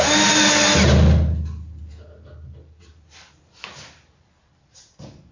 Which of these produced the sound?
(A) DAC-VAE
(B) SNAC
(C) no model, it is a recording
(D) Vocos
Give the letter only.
C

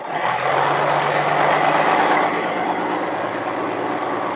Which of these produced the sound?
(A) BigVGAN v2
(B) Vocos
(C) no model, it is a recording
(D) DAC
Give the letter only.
C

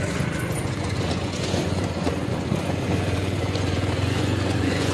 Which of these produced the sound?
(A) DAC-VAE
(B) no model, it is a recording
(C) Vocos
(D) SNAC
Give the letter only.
C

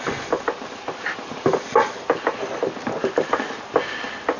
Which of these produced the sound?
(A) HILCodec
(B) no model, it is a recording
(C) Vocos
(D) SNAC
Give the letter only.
B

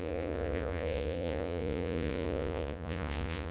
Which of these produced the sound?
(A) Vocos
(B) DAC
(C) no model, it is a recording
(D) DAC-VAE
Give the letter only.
A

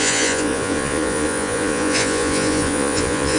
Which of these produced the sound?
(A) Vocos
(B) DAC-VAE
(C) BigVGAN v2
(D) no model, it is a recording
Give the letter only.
A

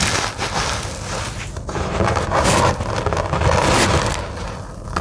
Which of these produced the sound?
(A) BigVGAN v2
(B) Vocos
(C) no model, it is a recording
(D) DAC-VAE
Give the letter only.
C